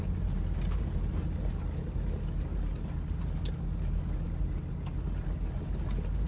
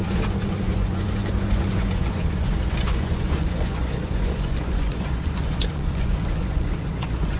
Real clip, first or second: first